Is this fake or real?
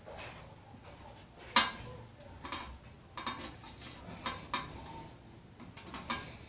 real